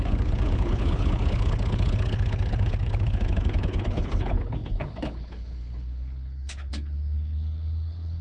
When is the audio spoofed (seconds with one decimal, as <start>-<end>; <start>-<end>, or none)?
0.0-8.2